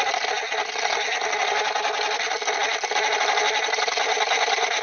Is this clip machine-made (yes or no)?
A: no